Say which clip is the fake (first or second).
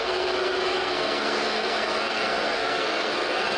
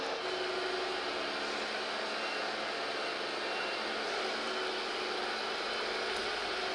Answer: first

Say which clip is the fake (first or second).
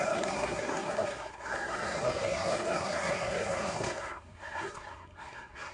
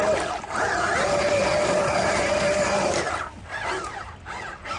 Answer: first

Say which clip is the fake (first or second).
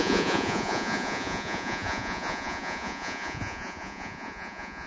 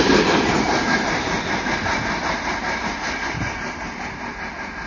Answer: first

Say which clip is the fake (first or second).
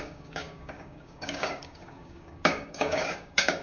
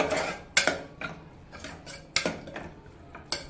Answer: first